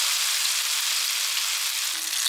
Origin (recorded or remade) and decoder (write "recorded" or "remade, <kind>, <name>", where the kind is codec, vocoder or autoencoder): recorded